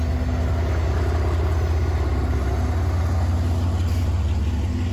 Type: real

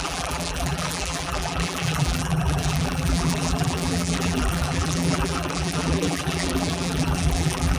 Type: fake